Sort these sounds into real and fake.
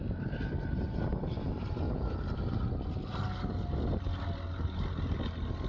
real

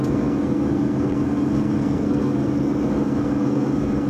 fake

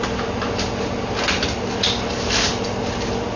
real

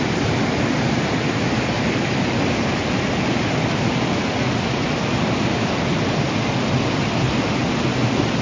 real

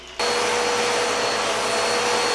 real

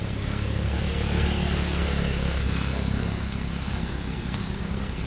fake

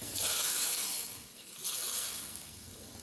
fake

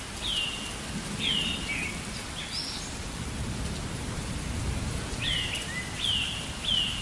real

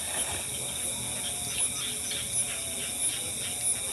real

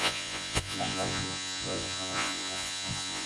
fake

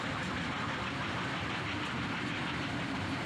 fake